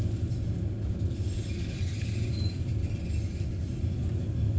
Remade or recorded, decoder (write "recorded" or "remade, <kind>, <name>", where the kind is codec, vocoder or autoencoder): recorded